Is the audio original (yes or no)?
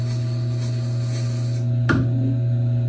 yes